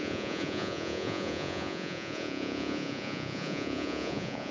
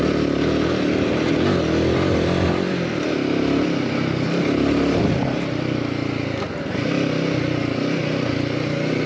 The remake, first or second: first